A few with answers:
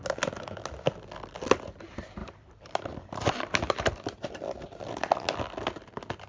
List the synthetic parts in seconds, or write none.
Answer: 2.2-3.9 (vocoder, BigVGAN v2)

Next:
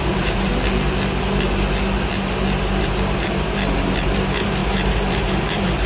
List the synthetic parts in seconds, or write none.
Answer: 0.0-0.5 (vocoder, BigVGAN v2); 2.8-5.9

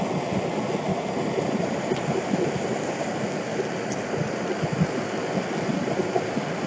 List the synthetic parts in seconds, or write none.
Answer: 0.9-2.5 (vocoder, BigVGAN v2)

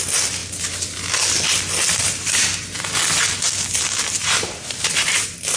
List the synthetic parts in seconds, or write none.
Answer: 4.2-5.6 (vocoder, BigVGAN v2)

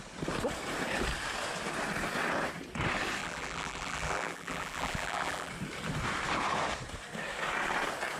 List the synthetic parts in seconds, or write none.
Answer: 3.2-5.5 (vocoder, BigVGAN v2)

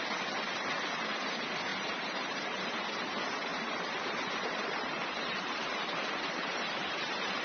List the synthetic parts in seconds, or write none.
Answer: 1.7-2.8 (vocoder, BigVGAN v2); 3.5-7.4

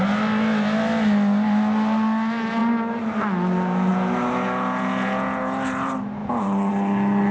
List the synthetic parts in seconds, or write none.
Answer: 6.2-6.7 (vocoder, BigVGAN v2)

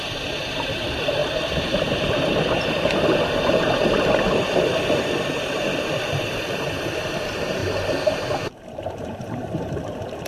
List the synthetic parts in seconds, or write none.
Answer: 0.0-10.3 (vocoder, BigVGAN v2)